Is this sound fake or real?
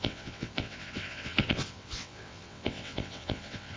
fake